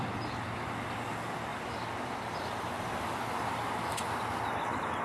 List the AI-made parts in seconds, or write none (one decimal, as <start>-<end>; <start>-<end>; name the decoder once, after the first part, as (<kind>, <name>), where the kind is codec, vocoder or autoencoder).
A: none